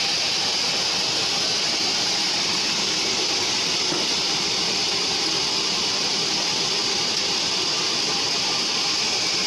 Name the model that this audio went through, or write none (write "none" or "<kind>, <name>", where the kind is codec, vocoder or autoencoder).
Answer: none